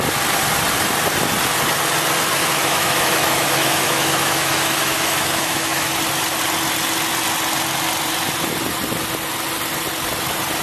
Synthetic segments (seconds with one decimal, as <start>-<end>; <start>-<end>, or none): 2.4-6.0